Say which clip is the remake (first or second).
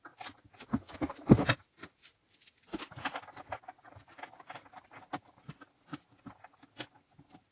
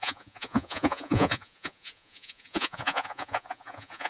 second